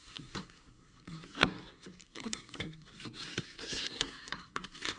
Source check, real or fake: fake